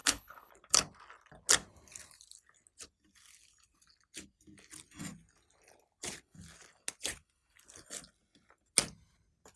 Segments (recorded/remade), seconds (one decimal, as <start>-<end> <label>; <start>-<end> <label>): 0.0-0.5 remade; 0.5-9.6 recorded

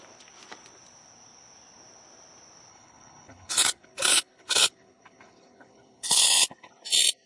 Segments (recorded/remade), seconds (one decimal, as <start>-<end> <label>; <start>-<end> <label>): 0.0-2.7 recorded; 2.7-6.7 remade; 6.7-7.3 recorded

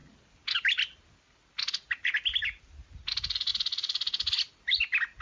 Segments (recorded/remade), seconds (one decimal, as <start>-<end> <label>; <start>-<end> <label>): 0.0-5.2 recorded

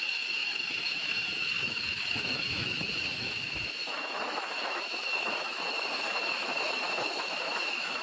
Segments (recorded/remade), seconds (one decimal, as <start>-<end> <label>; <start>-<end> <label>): 0.0-8.0 remade

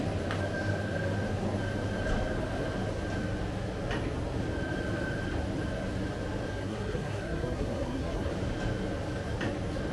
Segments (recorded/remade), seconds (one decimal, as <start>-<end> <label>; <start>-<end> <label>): 0.0-6.5 recorded; 6.5-8.3 remade; 8.3-9.9 recorded

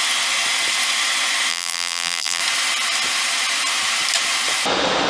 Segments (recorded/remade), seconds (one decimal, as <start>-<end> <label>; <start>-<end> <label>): 0.0-1.5 recorded; 1.5-2.4 remade; 2.4-5.1 recorded

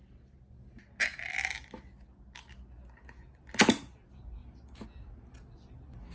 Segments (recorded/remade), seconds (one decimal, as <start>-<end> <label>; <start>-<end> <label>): 0.0-6.1 recorded

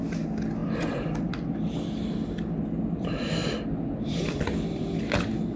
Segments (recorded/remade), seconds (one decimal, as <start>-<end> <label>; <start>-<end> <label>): 0.0-5.6 recorded